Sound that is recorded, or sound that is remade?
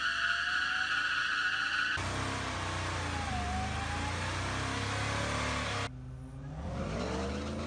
recorded